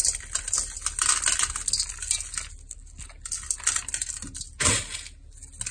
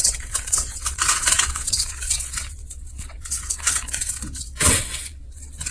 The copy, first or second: second